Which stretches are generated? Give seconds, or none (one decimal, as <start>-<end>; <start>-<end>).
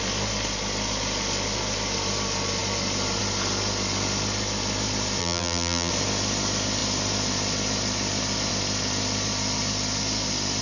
5.2-5.9